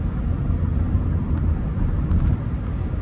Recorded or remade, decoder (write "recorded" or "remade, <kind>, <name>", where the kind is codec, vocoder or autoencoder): recorded